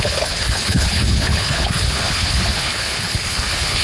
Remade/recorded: remade